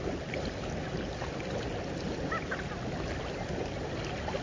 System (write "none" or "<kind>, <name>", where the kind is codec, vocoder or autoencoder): none